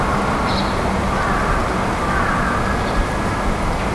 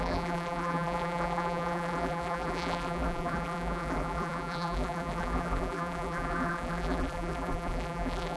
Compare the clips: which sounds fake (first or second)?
second